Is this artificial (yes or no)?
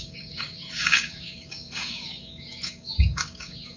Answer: yes